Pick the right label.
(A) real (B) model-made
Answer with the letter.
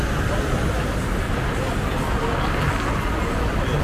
A